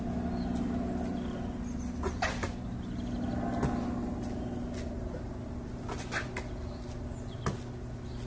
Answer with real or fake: real